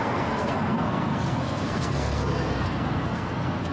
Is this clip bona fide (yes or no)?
no